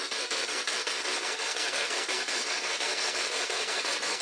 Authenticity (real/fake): fake